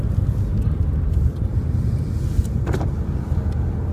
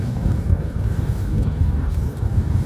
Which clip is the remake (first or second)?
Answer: second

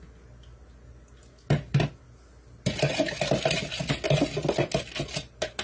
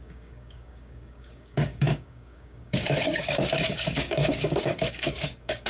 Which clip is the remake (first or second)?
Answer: second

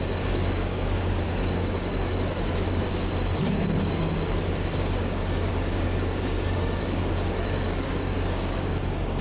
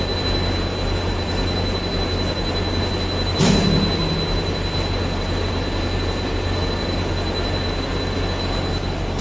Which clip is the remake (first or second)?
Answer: first